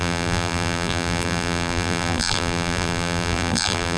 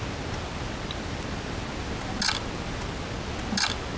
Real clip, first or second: second